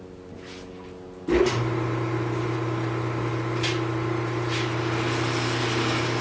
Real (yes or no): yes